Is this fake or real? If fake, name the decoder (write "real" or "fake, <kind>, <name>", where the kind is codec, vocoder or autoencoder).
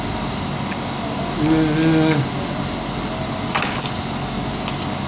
real